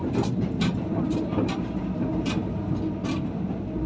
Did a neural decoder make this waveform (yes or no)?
no